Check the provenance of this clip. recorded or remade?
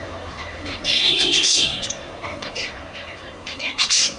remade